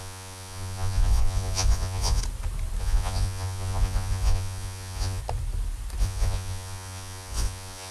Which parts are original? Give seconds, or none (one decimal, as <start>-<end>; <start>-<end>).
2.2-2.8; 5.2-6.0